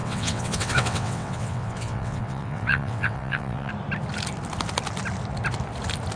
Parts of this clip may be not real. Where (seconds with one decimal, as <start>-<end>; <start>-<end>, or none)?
0.0-3.7